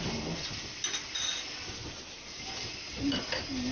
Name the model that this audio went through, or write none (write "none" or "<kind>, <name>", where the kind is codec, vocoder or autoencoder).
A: none